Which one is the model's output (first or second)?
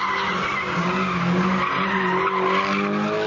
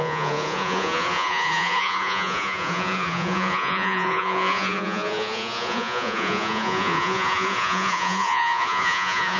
second